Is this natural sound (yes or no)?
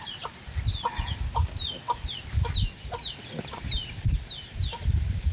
yes